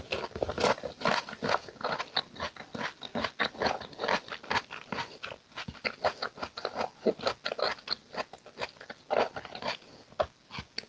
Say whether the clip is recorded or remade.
recorded